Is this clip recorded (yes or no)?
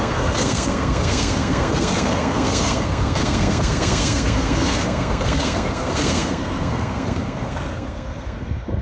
no